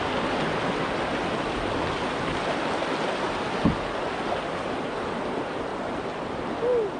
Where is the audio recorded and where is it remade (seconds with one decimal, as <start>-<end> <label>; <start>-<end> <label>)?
0.0-7.0 recorded